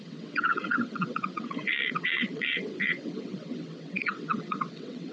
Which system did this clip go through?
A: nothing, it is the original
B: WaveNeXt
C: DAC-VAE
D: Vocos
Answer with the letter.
B